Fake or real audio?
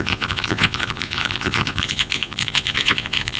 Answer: fake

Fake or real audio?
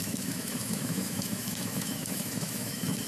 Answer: fake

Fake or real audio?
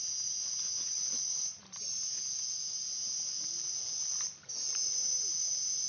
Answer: real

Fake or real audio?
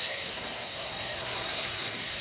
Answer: fake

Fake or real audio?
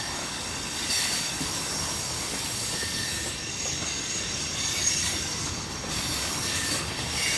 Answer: fake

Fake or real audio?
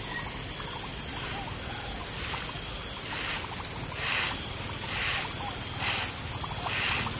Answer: real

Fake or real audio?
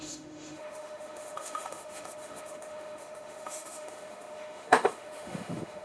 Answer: fake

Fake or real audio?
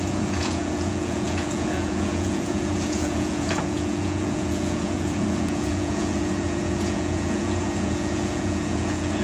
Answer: fake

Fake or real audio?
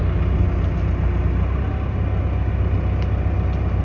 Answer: real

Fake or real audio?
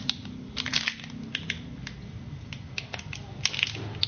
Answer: real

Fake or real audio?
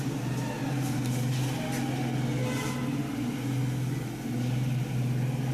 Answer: real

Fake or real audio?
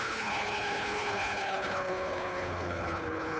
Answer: fake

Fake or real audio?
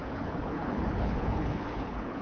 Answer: fake